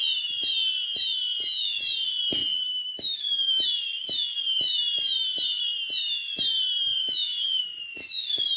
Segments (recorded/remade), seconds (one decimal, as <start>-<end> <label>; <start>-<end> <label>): 0.0-0.6 recorded; 0.6-1.8 remade; 1.8-6.9 recorded; 6.9-7.6 remade; 7.6-8.6 recorded